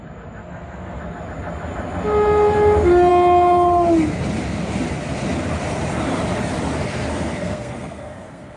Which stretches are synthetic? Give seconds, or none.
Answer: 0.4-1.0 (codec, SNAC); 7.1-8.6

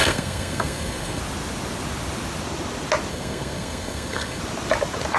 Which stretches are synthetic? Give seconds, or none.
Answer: 0.0-1.2 (codec, SNAC); 3.1-4.4

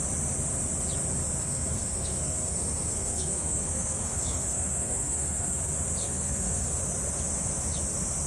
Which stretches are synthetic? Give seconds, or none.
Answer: 1.4-5.6 (codec, SNAC); 6.0-6.8

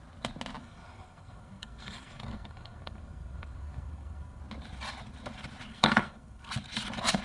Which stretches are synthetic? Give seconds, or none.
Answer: 0.6-4.4 (codec, SNAC); 5.7-6.5

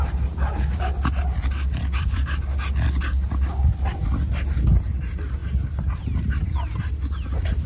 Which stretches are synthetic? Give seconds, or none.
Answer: none

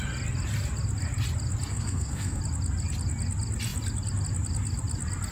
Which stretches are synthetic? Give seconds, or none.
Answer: 1.7-2.4 (codec, SNAC)

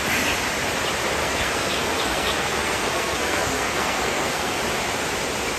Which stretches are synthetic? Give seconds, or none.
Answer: 1.2-4.6 (codec, SNAC)

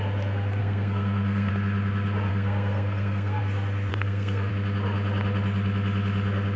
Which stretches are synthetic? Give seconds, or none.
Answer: 0.6-1.5 (codec, SNAC); 2.3-3.4; 3.9-4.5